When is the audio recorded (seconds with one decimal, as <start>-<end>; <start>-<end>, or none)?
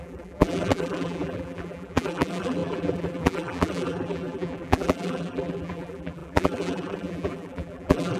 none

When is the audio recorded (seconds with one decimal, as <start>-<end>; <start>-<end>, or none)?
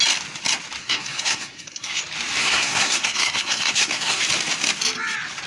0.0-0.8; 2.0-2.4; 4.2-5.5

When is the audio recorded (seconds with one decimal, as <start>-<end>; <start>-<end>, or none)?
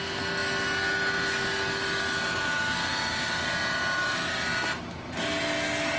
0.0-6.0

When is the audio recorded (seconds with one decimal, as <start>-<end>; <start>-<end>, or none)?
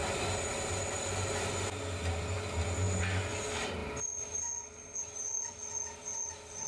0.0-6.7